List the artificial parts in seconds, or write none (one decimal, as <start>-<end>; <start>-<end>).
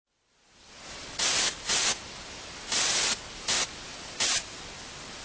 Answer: 1.0-1.7; 3.9-4.6